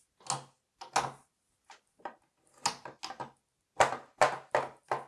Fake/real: real